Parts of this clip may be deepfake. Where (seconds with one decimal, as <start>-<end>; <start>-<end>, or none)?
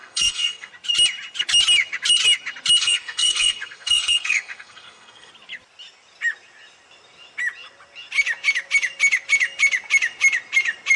0.0-0.7; 2.8-5.3